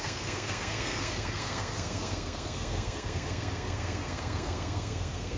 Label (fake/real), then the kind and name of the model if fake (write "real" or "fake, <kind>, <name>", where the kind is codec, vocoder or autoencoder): fake, codec, SNAC